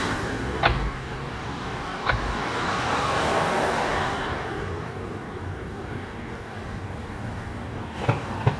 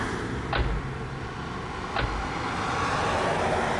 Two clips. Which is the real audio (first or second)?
second